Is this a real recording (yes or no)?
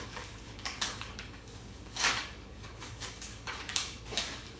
no